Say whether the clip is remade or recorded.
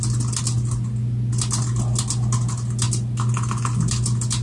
recorded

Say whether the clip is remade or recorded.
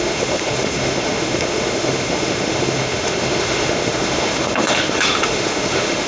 remade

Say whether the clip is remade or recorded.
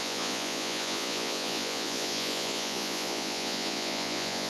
remade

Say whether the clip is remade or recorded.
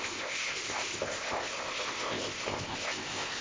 remade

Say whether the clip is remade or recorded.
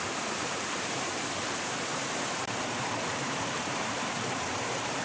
remade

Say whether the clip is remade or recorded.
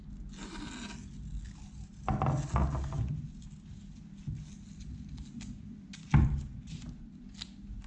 recorded